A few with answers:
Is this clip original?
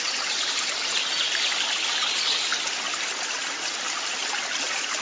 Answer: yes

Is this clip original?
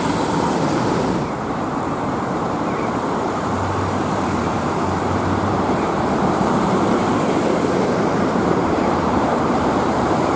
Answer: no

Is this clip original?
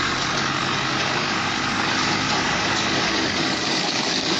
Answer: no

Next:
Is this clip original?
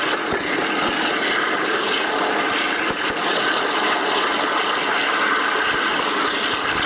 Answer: yes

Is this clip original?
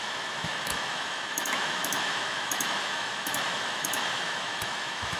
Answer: no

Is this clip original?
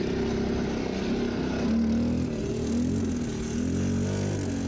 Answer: yes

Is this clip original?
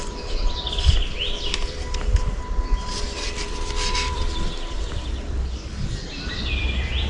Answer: no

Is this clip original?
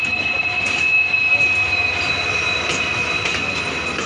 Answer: yes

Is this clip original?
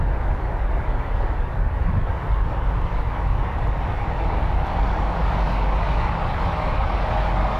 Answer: no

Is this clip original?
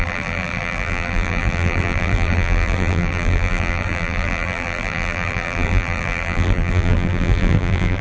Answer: no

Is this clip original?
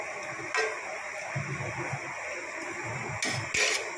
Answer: yes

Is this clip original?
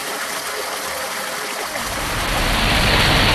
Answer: yes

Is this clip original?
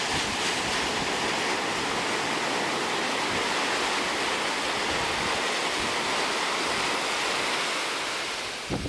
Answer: yes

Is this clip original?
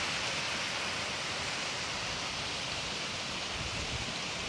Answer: yes